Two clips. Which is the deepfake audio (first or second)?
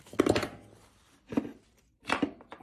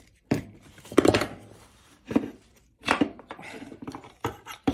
second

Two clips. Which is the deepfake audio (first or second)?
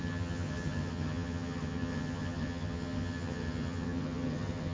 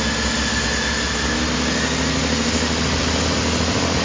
first